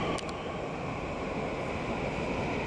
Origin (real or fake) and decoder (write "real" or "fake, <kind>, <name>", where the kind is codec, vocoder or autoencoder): real